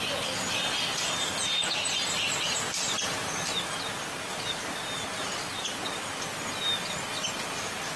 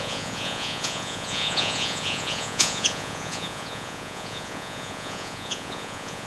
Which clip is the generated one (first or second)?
second